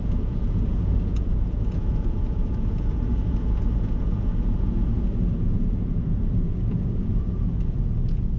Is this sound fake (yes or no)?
yes